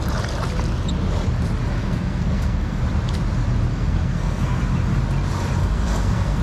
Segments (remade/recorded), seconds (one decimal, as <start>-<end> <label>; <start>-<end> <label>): 0.0-1.8 recorded; 1.8-2.8 remade; 2.8-3.7 recorded; 3.7-4.6 remade; 4.6-5.6 recorded; 5.6-6.4 remade